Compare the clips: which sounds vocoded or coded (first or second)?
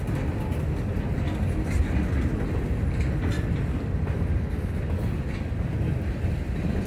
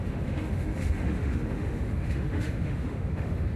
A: second